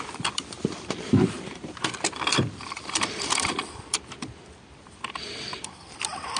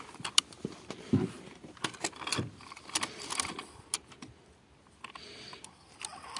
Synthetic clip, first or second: first